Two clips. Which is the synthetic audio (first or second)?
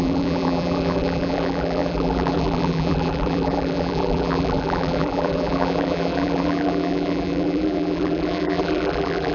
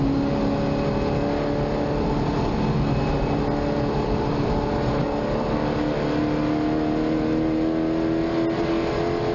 first